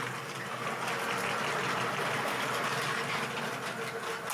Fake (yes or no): no